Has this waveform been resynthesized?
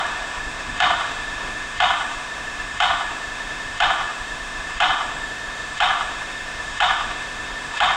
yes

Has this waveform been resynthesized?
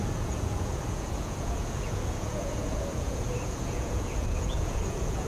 yes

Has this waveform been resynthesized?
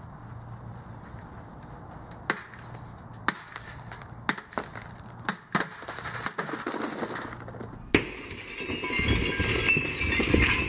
no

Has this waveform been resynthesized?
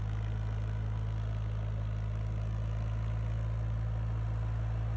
no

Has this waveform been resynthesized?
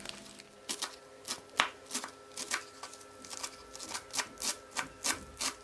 no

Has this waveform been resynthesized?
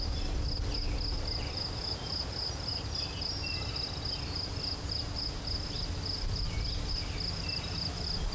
no